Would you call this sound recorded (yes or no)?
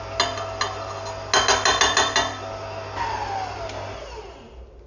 yes